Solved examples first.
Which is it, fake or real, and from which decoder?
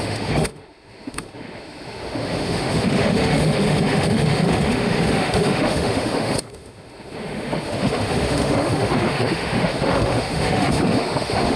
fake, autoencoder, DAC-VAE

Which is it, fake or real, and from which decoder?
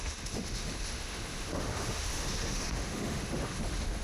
fake, autoencoder, DAC-VAE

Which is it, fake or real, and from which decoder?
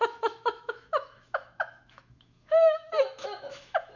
fake, autoencoder, DAC-VAE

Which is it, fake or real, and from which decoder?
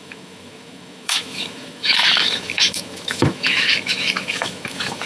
fake, autoencoder, DAC-VAE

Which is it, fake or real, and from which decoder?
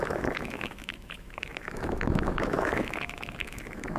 fake, autoencoder, DAC-VAE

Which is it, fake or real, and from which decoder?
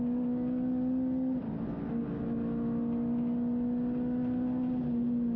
real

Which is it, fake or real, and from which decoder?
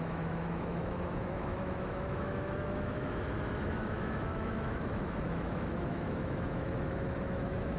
fake, autoencoder, DAC-VAE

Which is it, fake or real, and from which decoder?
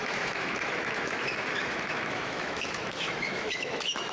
fake, autoencoder, DAC-VAE